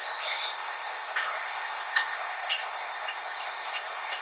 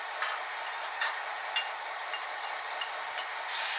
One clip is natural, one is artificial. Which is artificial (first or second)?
first